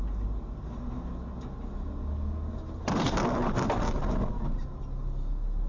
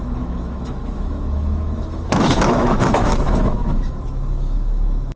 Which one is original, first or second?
first